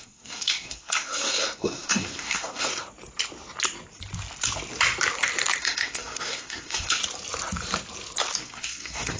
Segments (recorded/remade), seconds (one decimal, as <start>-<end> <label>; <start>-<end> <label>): 0.0-2.7 remade; 2.7-5.6 recorded; 5.6-7.0 remade; 7.0-8.4 recorded; 8.4-9.2 remade